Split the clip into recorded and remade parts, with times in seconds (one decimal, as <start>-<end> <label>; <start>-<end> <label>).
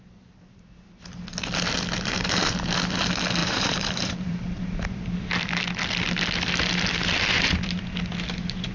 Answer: 0.0-3.4 recorded; 3.4-4.7 remade; 4.7-8.7 recorded